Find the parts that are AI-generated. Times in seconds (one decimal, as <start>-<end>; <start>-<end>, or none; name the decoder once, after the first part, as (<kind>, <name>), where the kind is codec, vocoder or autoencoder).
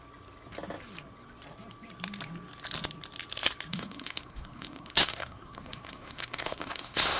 3.7-7.2 (codec, SNAC)